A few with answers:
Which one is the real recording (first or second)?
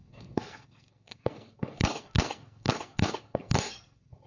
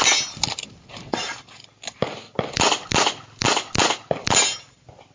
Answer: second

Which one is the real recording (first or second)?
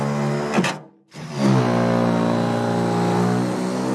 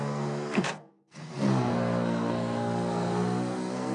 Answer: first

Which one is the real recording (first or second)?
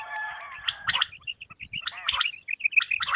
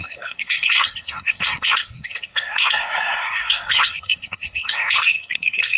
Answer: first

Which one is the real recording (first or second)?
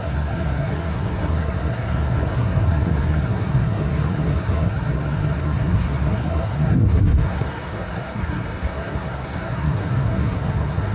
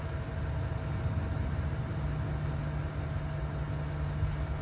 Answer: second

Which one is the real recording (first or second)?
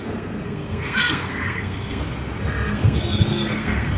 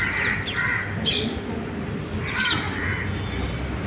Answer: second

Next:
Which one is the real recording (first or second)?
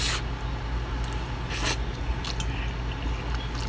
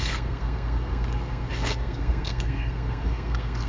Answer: first